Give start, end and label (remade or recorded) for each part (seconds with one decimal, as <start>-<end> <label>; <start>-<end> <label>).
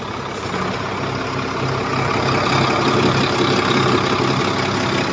0.0-5.1 recorded